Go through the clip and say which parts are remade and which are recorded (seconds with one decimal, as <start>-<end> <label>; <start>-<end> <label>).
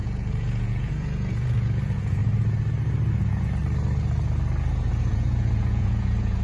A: 0.0-2.2 remade; 2.2-3.2 recorded; 3.2-3.6 remade; 3.6-4.7 recorded; 4.7-6.4 remade